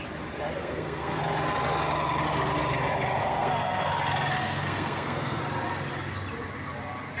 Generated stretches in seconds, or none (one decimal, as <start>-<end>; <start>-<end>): 0.6-1.2; 3.2-3.9; 4.3-5.4